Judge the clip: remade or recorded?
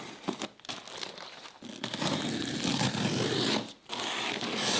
recorded